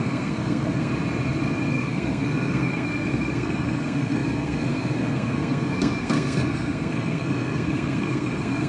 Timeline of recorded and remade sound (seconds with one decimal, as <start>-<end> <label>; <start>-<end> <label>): 0.0-0.9 remade; 0.9-1.7 recorded; 1.7-8.7 remade